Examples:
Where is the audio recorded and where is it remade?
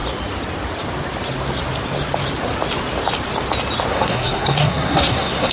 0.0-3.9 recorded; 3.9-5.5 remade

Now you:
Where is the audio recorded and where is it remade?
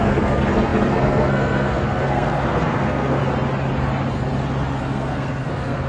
0.0-3.2 remade; 3.2-4.8 recorded; 4.8-5.9 remade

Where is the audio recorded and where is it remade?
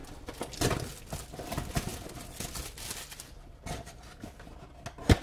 0.0-5.2 recorded